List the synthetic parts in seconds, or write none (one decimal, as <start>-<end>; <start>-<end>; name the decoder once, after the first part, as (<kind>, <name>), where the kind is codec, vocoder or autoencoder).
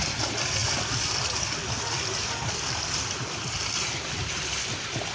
none